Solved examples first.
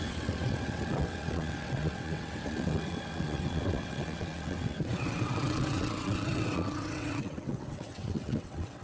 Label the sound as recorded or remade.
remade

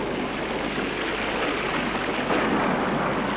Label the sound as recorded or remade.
recorded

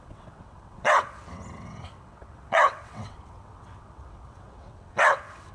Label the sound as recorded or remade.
remade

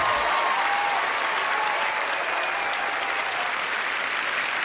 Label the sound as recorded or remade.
recorded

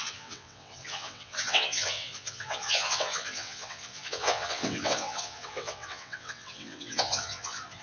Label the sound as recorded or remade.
remade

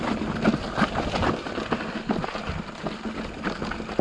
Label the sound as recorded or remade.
recorded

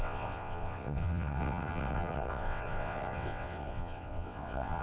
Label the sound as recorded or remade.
remade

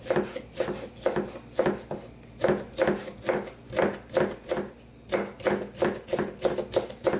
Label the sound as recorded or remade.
recorded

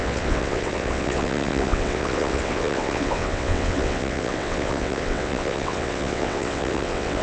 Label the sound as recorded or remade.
remade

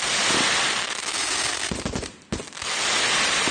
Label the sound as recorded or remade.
recorded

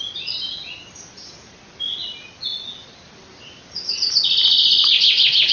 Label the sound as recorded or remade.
recorded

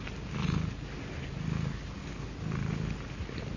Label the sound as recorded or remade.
recorded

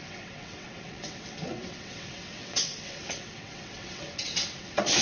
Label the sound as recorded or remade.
remade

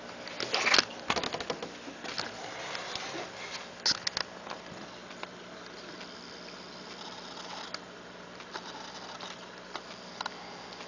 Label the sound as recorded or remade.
recorded